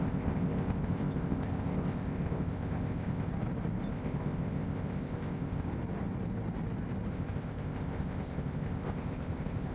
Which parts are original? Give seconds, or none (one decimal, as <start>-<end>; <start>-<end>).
3.3-3.9; 5.7-7.1